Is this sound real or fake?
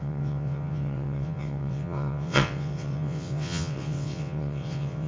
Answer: fake